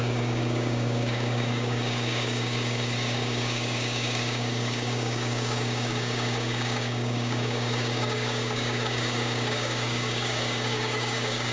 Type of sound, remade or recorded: remade